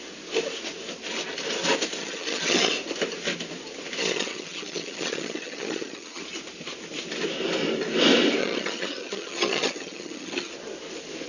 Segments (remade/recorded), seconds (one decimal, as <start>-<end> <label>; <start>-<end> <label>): 0.0-2.0 recorded; 2.0-2.7 remade; 2.7-4.0 recorded; 4.0-6.2 remade; 6.2-8.4 recorded; 8.4-10.5 remade; 10.5-11.3 recorded